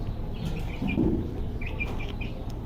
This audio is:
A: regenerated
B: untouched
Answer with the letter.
B